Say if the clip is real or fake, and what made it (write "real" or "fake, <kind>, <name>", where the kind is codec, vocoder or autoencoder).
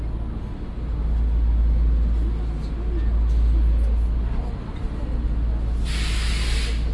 real